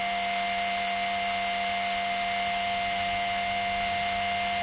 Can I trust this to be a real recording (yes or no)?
yes